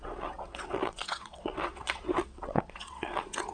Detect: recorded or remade remade